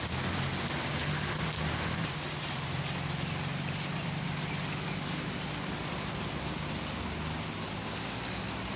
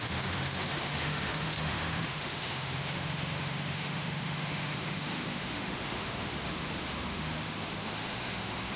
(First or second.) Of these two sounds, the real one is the first